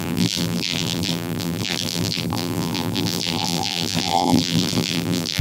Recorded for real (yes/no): no